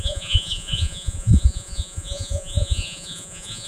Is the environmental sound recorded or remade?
remade